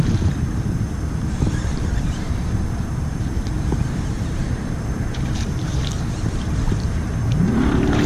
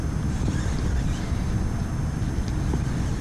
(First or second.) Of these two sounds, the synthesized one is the first